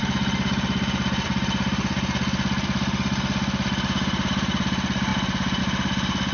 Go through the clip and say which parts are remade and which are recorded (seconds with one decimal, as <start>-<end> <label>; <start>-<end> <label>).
0.0-5.1 recorded; 5.1-5.6 remade; 5.6-6.3 recorded